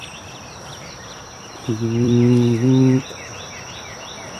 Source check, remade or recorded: remade